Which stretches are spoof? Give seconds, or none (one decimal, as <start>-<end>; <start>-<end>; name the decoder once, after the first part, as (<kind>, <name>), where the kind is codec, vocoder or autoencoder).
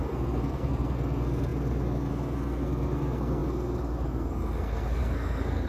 0.0-5.7 (codec, SNAC)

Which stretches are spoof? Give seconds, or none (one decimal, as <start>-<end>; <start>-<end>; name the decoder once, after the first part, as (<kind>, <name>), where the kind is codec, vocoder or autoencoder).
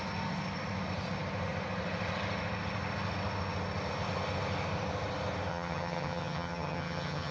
5.5-7.3 (vocoder, HiFi-GAN)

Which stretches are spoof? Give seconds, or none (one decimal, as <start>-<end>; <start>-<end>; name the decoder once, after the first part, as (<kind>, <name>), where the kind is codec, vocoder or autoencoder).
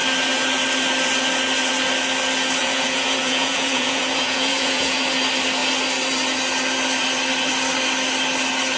2.6-5.0 (vocoder, Vocos)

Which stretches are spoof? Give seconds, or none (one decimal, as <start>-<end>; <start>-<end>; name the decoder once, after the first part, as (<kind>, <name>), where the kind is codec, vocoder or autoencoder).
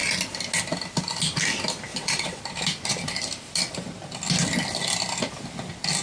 1.9-2.4 (vocoder, WaveNeXt)